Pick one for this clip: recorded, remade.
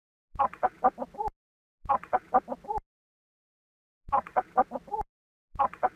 recorded